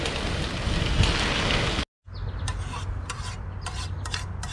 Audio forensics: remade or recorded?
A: recorded